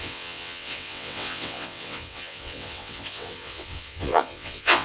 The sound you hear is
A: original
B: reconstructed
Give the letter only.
B